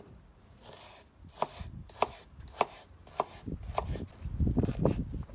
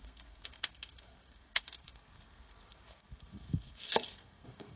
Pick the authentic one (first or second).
first